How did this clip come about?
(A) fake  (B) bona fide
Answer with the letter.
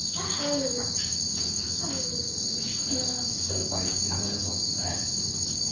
A